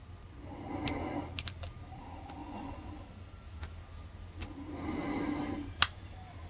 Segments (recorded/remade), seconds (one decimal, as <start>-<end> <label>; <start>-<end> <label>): 0.0-2.4 recorded; 2.4-2.9 remade; 2.9-6.5 recorded